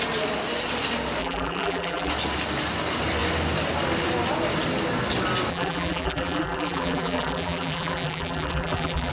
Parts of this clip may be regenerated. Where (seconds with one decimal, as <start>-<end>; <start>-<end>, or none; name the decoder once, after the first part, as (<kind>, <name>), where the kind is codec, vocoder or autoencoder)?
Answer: 1.2-2.1 (vocoder, BigVGAN v2); 5.5-9.1